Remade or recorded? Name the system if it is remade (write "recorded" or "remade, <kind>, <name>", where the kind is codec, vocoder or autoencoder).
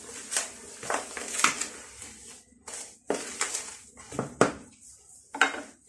recorded